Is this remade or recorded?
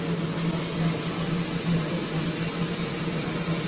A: recorded